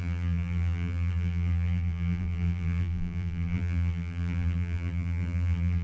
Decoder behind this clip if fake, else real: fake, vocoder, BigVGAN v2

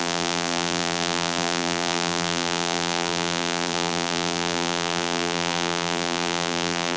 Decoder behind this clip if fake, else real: fake, vocoder, BigVGAN v2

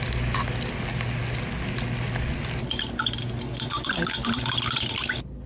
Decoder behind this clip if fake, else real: real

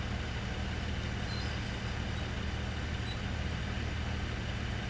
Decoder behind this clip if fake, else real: real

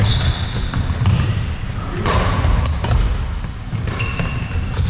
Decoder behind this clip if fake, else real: real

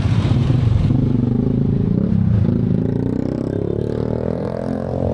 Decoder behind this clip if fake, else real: fake, vocoder, BigVGAN v2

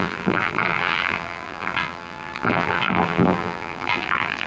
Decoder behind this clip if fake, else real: fake, vocoder, BigVGAN v2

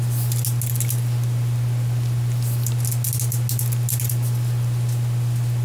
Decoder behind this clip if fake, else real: real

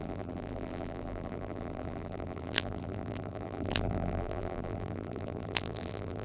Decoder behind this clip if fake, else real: fake, vocoder, BigVGAN v2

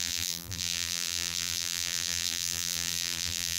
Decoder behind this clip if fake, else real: fake, vocoder, BigVGAN v2